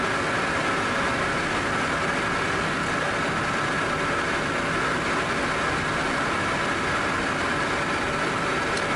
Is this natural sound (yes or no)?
yes